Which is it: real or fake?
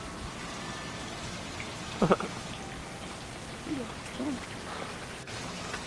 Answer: real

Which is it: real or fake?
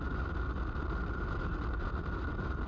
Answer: real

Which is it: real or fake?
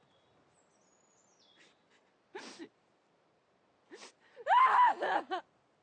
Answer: real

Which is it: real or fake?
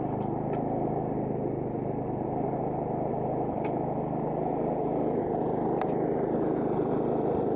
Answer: real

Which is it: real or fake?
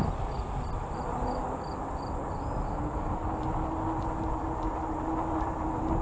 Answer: real